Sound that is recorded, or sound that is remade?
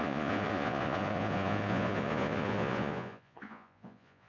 remade